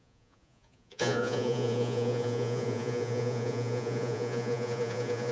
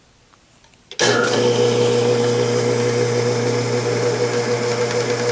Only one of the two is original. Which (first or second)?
second